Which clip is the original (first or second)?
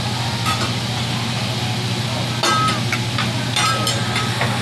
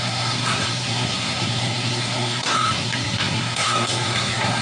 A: first